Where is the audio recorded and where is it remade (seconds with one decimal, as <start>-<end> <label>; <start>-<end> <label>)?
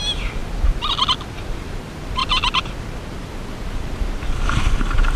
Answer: 0.0-0.4 remade; 0.4-1.6 recorded; 1.6-2.2 remade; 2.2-3.2 recorded; 3.2-5.2 remade